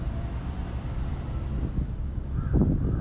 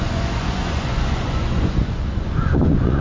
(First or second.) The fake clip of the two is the second